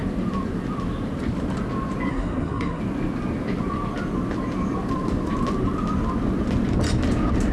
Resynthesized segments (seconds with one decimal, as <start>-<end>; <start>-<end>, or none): 2.1-2.8